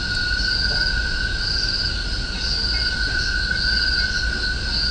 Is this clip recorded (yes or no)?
yes